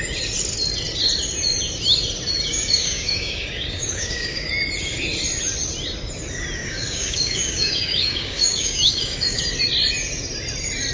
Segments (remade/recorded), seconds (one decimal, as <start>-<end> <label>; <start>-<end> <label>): 0.0-2.5 recorded; 2.5-4.5 remade; 4.5-6.6 recorded; 6.6-9.4 remade; 9.4-10.9 recorded